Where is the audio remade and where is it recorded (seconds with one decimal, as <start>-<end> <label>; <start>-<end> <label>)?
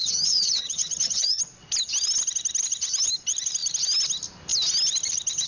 0.0-1.4 remade; 1.4-5.5 recorded